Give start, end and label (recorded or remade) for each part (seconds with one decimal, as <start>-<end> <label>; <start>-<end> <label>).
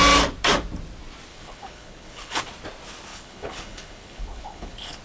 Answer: 0.0-1.3 recorded; 1.3-2.4 remade; 2.4-3.1 recorded; 3.1-5.0 remade